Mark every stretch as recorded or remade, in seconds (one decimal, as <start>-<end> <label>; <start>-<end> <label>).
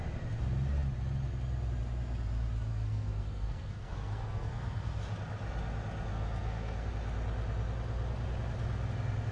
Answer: 0.0-2.7 recorded; 2.7-5.0 remade; 5.0-6.1 recorded; 6.1-6.9 remade; 6.9-9.3 recorded